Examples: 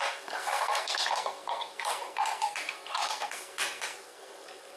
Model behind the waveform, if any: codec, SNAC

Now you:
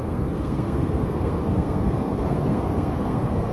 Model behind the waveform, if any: codec, SNAC